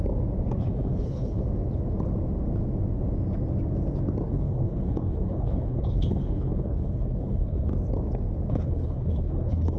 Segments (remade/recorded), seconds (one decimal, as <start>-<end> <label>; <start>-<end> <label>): 0.0-0.6 recorded; 0.6-1.4 remade; 1.4-4.3 recorded; 4.3-7.7 remade; 7.7-8.5 recorded; 8.5-9.8 remade